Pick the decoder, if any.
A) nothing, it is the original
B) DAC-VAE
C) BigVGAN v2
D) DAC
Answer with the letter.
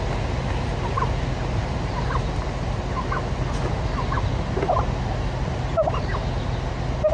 A